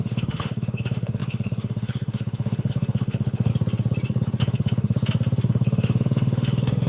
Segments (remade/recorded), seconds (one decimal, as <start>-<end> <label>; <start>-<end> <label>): 0.0-3.5 remade; 3.5-4.4 recorded; 4.4-5.0 remade; 5.0-5.5 recorded; 5.5-6.9 remade